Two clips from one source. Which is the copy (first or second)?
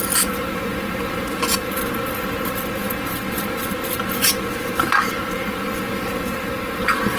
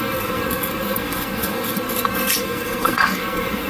second